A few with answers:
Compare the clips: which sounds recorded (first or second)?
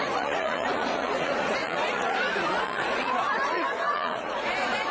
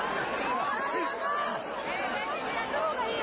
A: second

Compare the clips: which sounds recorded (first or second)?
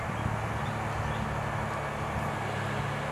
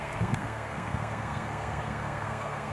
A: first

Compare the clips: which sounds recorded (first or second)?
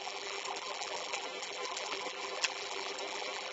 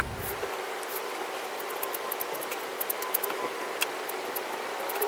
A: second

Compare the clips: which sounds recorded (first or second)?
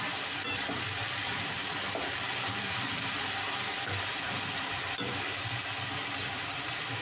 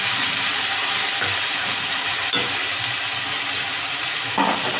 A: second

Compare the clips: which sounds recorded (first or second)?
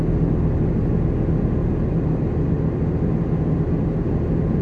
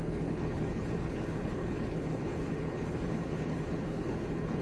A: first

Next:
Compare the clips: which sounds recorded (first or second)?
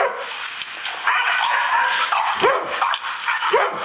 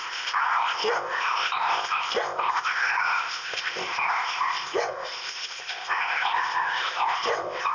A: first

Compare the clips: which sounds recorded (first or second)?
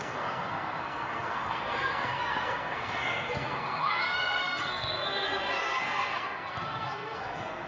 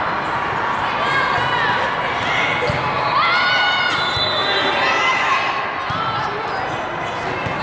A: second